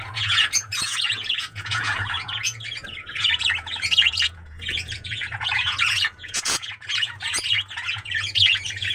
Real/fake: fake